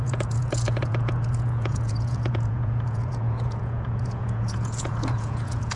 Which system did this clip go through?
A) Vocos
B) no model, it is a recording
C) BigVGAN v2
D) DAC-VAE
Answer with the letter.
A